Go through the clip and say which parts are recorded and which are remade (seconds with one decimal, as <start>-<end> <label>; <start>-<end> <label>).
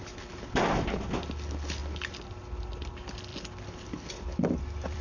0.0-3.3 recorded; 3.3-5.0 remade